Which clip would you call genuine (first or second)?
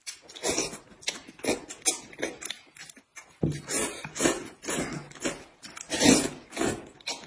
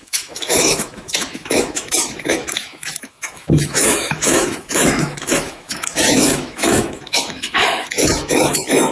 first